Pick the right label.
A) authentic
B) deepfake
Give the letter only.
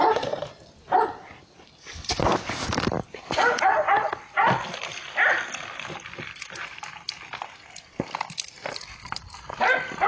A